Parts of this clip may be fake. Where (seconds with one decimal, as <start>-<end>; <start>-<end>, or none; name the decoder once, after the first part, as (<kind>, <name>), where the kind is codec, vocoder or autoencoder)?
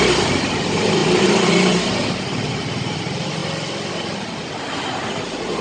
0.0-3.4 (vocoder, BigVGAN v2); 3.9-5.6